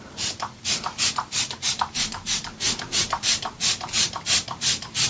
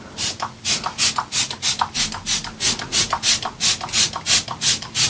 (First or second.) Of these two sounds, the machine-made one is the first